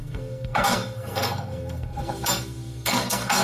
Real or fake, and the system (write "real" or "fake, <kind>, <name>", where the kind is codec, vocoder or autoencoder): fake, codec, SNAC